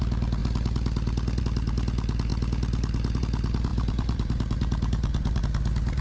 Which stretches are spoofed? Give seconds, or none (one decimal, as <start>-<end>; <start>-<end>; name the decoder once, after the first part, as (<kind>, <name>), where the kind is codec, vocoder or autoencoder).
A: 3.7-5.4 (vocoder, BigVGAN v2)